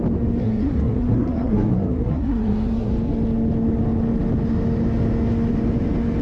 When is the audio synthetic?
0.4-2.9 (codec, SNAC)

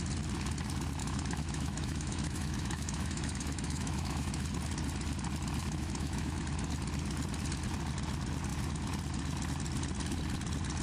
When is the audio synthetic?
1.0-4.5 (autoencoder, DAC-VAE); 5.6-6.4

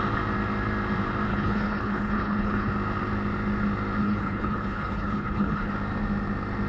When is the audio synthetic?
1.3-2.7 (codec, HILCodec); 4.0-5.7

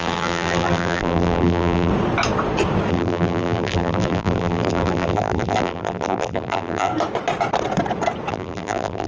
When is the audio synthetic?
0.0-1.9 (vocoder, BigVGAN v2); 2.9-6.9; 8.3-9.1